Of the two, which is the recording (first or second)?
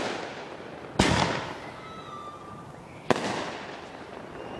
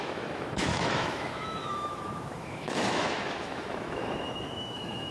first